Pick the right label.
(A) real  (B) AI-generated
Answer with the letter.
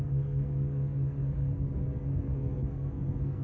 B